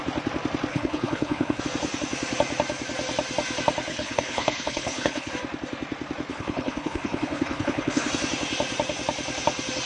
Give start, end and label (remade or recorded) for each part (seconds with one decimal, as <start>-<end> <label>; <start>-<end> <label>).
0.0-0.7 recorded; 0.7-1.6 remade; 1.6-3.9 recorded; 3.9-5.3 remade; 5.3-6.3 recorded; 6.3-8.1 remade; 8.1-9.9 recorded